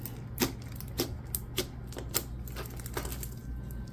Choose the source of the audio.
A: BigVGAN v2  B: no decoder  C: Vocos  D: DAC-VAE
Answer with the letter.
B